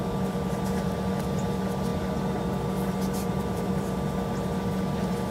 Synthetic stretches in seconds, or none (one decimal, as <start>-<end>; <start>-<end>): none